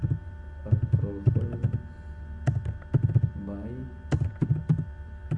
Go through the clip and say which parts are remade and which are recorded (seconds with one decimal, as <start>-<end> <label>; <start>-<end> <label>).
0.0-5.4 recorded